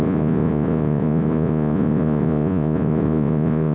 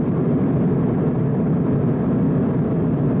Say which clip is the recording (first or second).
second